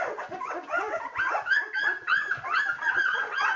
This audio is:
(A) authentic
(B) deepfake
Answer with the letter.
B